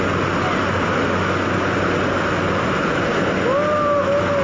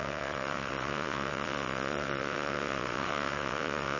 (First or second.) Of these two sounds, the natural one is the first